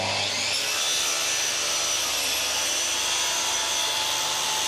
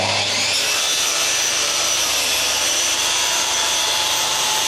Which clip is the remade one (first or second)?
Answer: second